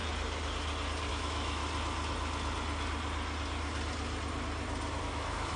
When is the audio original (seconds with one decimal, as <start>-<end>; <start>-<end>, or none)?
0.0-1.1; 1.6-5.0